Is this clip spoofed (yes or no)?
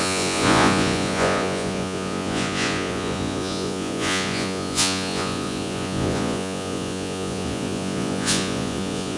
yes